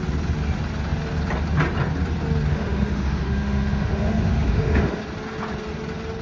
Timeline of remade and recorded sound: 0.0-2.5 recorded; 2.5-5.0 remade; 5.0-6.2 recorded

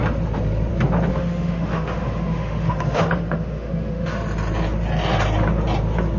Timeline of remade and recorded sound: 0.0-1.1 recorded; 1.1-4.1 remade; 4.1-6.2 recorded

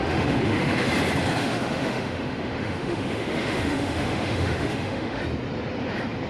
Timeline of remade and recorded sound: 0.0-0.9 remade; 0.9-1.4 recorded; 1.4-5.2 remade; 5.2-6.3 recorded

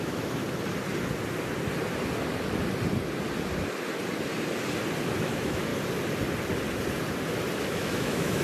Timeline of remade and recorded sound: 0.0-0.4 remade; 0.4-5.2 recorded; 5.2-5.7 remade; 5.7-7.6 recorded; 7.6-8.4 remade

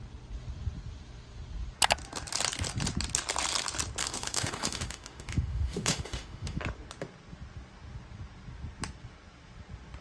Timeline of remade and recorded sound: 0.0-4.0 recorded; 4.0-6.6 remade; 6.6-10.0 recorded

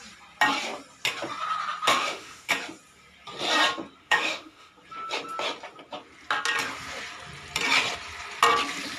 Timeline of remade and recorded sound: 0.0-1.9 recorded; 1.9-2.5 remade; 2.5-4.0 recorded; 4.0-4.7 remade; 4.7-9.0 recorded

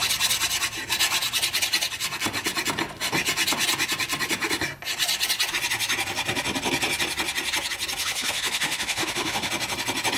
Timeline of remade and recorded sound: 0.0-8.0 recorded; 8.0-9.5 remade; 9.5-10.2 recorded